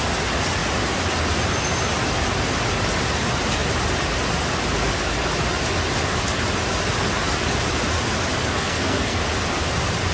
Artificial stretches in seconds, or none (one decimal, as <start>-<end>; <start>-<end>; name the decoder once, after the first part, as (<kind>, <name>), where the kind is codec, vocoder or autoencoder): 8.4-9.2 (codec, SNAC)